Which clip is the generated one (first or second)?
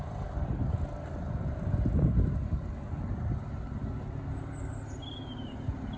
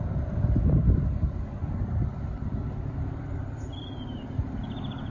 second